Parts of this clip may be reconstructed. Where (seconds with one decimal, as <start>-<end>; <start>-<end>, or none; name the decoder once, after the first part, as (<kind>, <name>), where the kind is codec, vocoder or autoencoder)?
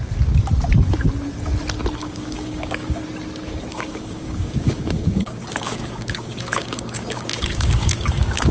2.0-3.0 (codec, DAC); 3.7-8.5